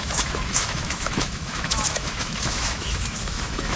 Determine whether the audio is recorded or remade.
remade